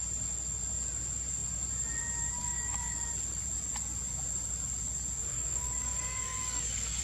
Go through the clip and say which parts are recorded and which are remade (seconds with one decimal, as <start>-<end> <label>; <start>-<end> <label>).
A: 0.0-2.4 recorded; 2.4-3.1 remade; 3.1-5.2 recorded; 5.2-7.0 remade